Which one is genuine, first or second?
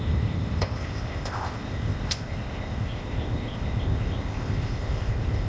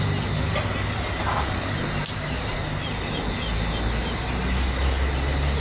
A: second